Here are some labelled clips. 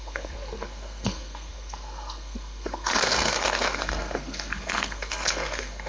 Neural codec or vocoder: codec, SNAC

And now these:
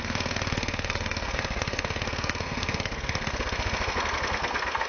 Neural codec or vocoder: codec, SNAC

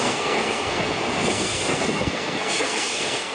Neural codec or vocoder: codec, SNAC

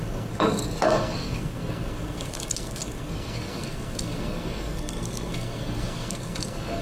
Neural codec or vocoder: codec, SNAC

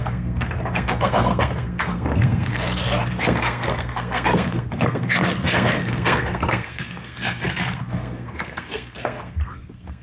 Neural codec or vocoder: codec, SNAC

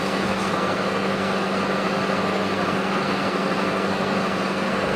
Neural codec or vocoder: codec, SNAC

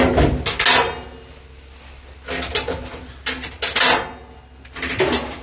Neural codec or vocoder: none